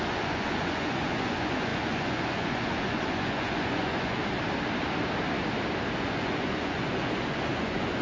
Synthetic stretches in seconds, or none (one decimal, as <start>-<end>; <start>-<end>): 0.0-4.2; 6.0-8.0